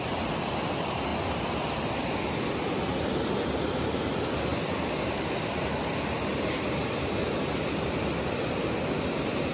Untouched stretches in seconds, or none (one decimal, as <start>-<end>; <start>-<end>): 0.0-9.5